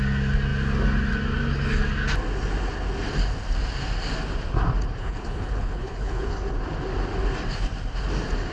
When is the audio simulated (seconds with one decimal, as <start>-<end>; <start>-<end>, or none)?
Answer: 5.0-6.3

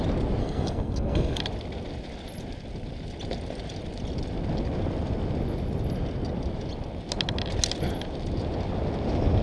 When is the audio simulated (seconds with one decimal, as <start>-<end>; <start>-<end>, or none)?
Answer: 0.4-1.4

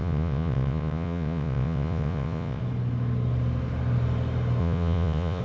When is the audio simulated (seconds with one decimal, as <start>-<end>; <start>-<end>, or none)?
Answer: 0.0-2.6; 4.6-5.4

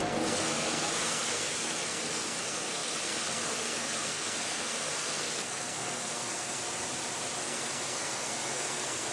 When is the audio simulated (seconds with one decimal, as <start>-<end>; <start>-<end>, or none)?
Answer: 0.0-6.6; 7.4-9.1

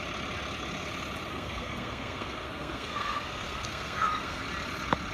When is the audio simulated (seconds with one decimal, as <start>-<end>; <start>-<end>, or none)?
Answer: 1.3-4.4